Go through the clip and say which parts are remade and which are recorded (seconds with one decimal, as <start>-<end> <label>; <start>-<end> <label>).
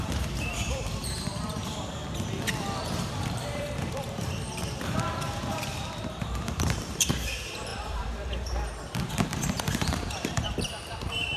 0.0-2.0 remade; 2.0-2.8 recorded; 2.8-11.4 remade